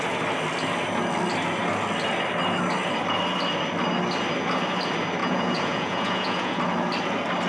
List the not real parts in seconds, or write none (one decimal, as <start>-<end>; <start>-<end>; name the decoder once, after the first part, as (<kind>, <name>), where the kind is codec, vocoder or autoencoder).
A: 5.2-6.6 (vocoder, Vocos)

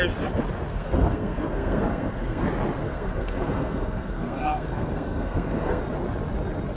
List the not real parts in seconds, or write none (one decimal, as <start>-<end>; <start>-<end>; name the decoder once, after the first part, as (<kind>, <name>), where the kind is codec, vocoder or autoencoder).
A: 0.7-2.4 (codec, SNAC); 2.8-5.8

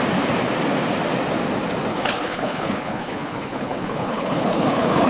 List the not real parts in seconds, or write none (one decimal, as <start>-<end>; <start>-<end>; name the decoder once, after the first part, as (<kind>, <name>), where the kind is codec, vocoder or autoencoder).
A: 1.9-5.1 (codec, HILCodec)

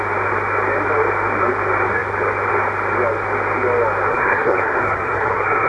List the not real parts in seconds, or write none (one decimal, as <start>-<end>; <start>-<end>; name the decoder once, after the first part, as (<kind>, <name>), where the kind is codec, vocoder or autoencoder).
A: 4.1-5.7 (codec, SNAC)

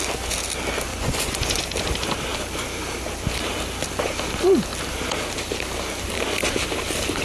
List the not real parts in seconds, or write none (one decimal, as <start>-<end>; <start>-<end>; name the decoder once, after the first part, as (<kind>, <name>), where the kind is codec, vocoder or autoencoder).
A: 0.9-1.6 (vocoder, Vocos)

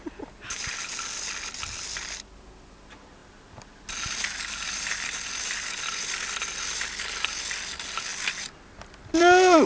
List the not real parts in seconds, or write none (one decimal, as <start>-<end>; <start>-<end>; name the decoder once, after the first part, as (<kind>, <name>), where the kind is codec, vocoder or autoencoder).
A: none